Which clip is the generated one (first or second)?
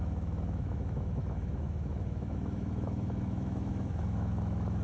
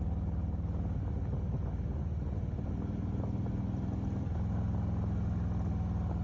first